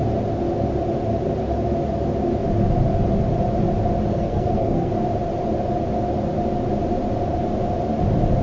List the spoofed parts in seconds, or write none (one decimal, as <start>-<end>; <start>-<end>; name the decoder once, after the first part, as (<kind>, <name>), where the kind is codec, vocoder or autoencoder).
4.1-4.9 (codec, SNAC)